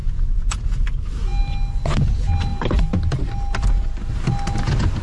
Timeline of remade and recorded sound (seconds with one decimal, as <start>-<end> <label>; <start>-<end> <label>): 0.0-0.8 remade; 0.8-5.0 recorded